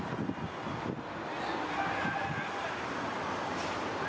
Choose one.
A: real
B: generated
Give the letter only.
A